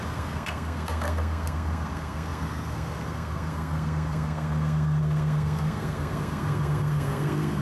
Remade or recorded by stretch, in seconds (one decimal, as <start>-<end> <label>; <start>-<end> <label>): 0.0-7.6 remade